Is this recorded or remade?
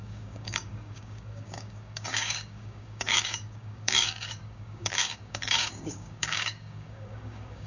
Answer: remade